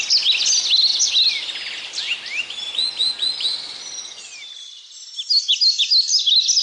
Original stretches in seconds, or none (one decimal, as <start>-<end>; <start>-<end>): 0.0-6.6

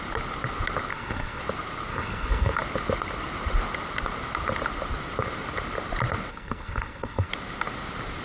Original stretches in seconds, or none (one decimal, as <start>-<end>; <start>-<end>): 0.0-0.9; 1.4-1.9; 2.6-6.3; 7.3-8.2

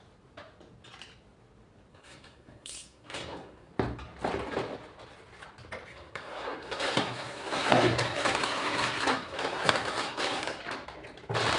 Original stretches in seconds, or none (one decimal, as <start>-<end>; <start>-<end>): 0.0-1.9; 3.7-5.9; 10.6-11.6

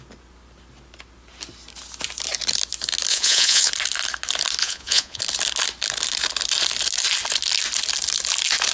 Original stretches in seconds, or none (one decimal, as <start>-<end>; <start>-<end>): 0.0-3.1; 3.7-4.6; 5.2-8.7

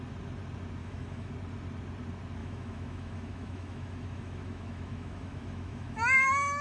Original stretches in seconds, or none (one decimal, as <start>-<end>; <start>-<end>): 0.0-0.8; 1.3-2.4

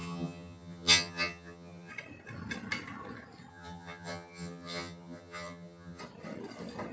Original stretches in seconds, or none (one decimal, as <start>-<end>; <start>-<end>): 1.9-3.5; 6.0-6.9